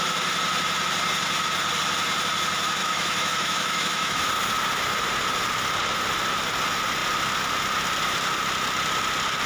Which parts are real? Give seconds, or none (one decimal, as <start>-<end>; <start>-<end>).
0.0-2.8; 4.3-9.5